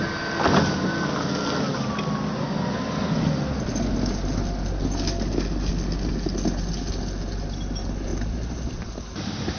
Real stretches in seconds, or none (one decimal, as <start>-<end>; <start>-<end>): 0.0-8.1; 9.2-9.6